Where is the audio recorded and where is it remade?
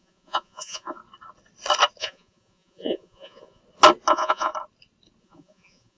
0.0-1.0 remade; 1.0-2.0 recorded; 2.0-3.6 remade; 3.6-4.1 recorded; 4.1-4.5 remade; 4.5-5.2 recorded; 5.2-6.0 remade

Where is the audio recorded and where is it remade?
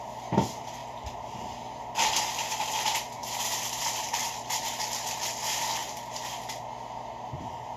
0.0-0.8 recorded; 0.8-1.8 remade; 1.8-3.2 recorded; 3.2-4.7 remade; 4.7-5.8 recorded; 5.8-6.4 remade; 6.4-7.8 recorded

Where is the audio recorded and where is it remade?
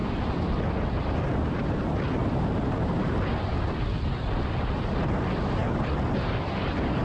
0.0-7.0 recorded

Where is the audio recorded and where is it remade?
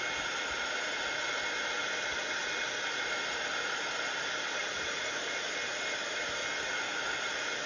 0.0-4.6 recorded; 4.6-5.2 remade; 5.2-7.7 recorded